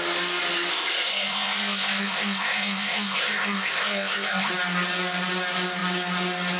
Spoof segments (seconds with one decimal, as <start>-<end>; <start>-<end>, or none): 0.7-4.5